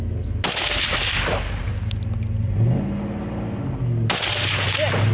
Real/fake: real